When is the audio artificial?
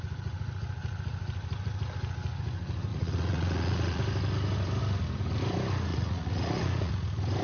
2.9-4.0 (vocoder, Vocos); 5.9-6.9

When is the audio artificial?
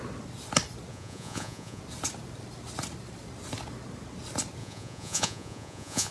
0.9-1.8 (vocoder, Vocos); 4.6-6.1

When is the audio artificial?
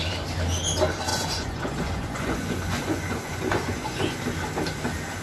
1.1-4.2 (vocoder, Vocos)